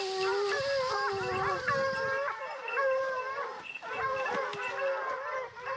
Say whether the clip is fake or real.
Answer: real